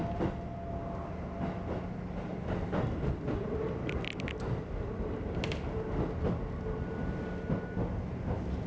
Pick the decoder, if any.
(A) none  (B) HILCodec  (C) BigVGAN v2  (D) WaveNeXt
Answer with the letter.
A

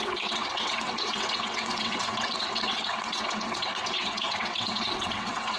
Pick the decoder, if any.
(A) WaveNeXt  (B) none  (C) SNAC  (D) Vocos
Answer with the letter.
A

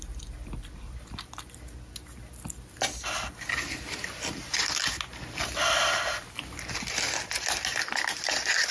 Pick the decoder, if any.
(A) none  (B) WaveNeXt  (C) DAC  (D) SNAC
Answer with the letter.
A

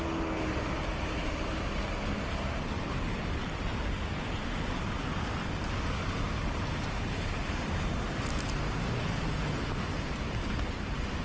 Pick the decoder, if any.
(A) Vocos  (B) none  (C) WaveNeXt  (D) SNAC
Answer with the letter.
B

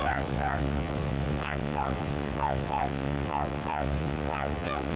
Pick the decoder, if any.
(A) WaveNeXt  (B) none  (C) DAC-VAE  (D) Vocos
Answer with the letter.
A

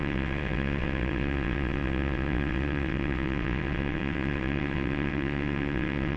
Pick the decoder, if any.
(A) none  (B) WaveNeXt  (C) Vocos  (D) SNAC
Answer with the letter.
B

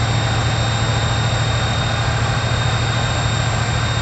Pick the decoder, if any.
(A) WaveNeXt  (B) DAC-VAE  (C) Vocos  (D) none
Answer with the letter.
D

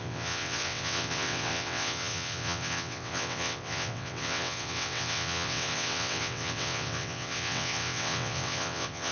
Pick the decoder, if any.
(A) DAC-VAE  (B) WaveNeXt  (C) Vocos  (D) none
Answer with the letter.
B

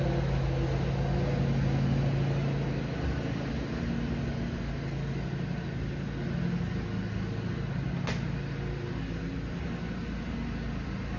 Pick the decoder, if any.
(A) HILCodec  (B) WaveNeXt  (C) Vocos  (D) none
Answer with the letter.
D